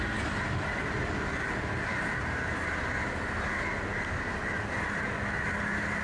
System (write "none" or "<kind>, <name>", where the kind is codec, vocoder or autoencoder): none